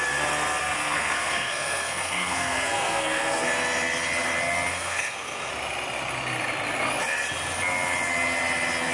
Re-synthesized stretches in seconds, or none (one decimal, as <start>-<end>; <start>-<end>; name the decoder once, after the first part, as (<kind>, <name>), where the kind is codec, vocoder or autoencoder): 0.6-3.5 (codec, SNAC); 4.7-5.5